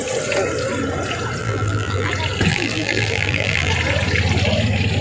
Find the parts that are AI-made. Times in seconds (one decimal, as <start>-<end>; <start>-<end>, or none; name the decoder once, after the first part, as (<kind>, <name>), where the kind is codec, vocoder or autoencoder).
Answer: 1.4-2.1 (vocoder, BigVGAN v2); 2.5-3.7